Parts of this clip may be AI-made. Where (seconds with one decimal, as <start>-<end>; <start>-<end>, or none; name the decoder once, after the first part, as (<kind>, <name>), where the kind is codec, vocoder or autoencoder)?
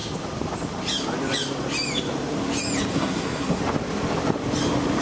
2.9-3.6 (codec, SNAC)